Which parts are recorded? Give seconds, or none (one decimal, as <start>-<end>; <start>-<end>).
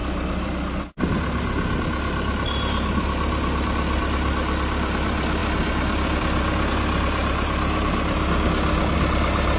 0.0-9.6